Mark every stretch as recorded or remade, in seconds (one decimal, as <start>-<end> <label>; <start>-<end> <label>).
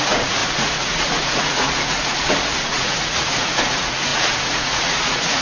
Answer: 0.0-5.4 remade